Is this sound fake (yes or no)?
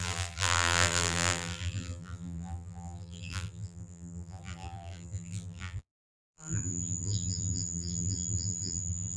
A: yes